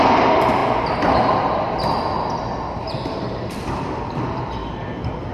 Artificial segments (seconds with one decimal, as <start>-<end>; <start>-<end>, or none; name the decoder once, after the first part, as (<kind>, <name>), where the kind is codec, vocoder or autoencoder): none